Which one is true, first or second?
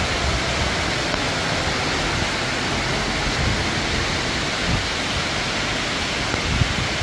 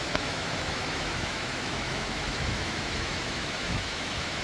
first